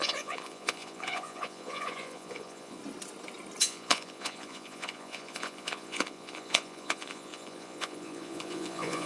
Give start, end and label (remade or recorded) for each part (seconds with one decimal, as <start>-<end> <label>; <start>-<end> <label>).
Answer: 0.0-2.8 remade; 2.8-3.6 recorded; 3.6-9.1 remade